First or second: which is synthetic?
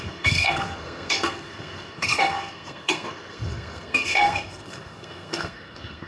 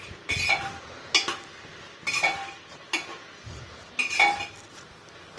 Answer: first